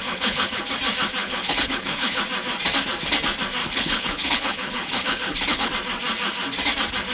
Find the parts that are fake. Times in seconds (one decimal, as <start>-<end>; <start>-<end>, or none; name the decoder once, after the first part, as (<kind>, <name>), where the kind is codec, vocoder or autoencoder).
0.0-0.6 (codec, HILCodec); 1.2-2.2; 3.6-5.7